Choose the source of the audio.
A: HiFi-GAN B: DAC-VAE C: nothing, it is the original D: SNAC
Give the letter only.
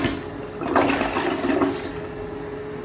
C